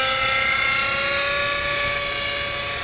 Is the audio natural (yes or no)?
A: yes